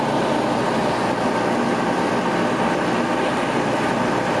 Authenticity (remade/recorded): recorded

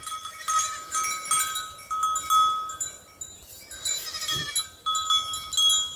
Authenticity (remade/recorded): recorded